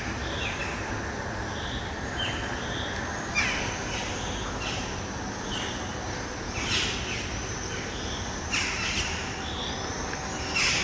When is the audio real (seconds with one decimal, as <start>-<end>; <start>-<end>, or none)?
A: 0.6-1.4; 4.0-7.5